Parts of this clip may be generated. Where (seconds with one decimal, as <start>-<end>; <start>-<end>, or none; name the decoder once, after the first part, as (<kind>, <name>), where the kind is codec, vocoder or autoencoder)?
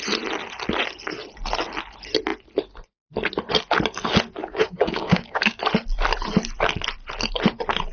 4.4-5.6 (codec, DAC)